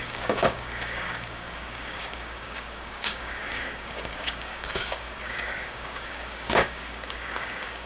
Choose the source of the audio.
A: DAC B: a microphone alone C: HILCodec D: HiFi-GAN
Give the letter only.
A